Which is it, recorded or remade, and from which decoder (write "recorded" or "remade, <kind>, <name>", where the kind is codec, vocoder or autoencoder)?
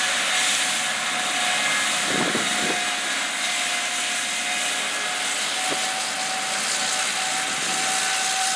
recorded